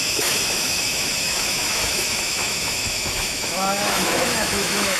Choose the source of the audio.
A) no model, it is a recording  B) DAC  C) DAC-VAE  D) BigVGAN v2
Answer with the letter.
C